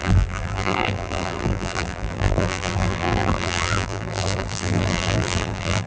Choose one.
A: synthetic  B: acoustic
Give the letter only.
A